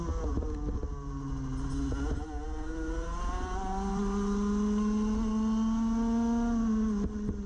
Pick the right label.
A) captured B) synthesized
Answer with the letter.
A